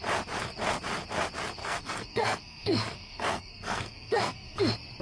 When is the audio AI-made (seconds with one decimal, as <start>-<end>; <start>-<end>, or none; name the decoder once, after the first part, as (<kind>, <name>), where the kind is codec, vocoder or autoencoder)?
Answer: 1.6-4.6 (codec, SNAC)